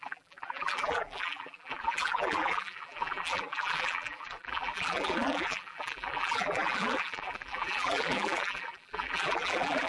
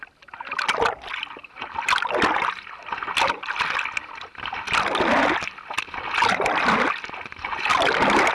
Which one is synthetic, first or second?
first